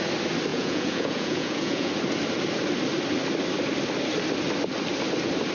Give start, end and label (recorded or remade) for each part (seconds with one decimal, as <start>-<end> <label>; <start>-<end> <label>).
0.0-0.5 recorded; 0.5-1.9 remade; 1.9-5.5 recorded

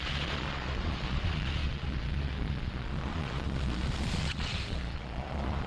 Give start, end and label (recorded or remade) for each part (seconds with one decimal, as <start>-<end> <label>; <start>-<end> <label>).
0.0-5.7 remade